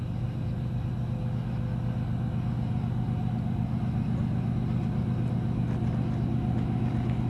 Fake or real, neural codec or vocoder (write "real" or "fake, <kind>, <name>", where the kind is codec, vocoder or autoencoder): real